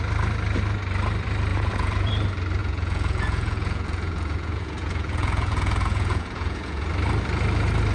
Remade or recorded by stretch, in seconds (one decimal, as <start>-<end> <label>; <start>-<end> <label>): 0.0-1.5 recorded; 1.5-2.1 remade; 2.1-2.6 recorded; 2.6-6.9 remade; 6.9-7.9 recorded

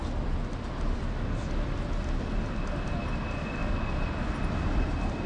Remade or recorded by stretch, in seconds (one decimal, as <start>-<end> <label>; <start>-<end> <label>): 0.0-5.3 recorded

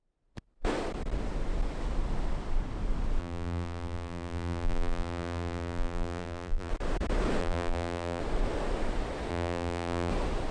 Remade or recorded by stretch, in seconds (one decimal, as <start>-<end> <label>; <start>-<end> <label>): 0.0-3.2 recorded; 3.2-6.7 remade; 6.7-7.4 recorded; 7.4-8.2 remade; 8.2-9.3 recorded; 9.3-10.1 remade; 10.1-10.5 recorded

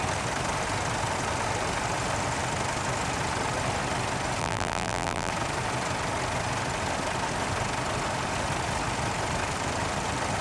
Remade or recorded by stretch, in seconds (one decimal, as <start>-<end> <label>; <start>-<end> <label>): 0.0-4.4 recorded; 4.4-5.3 remade; 5.3-10.4 recorded

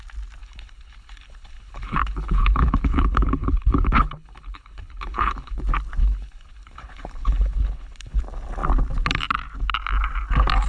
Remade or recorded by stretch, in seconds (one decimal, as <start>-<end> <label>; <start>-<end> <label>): 0.0-0.4 recorded; 0.4-5.6 remade; 5.6-6.0 recorded; 6.0-8.2 remade; 8.2-10.7 recorded

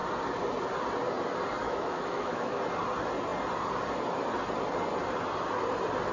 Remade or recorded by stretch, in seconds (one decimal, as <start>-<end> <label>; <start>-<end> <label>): 0.0-1.6 recorded; 1.6-2.6 remade; 2.6-6.1 recorded

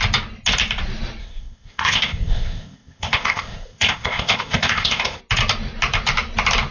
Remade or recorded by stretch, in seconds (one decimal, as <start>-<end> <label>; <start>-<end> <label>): 0.0-1.2 recorded; 1.2-5.2 remade; 5.2-6.7 recorded